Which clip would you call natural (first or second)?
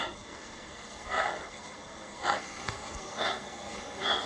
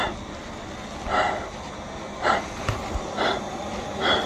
second